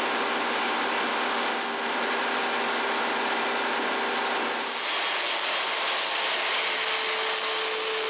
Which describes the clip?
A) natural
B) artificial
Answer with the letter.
A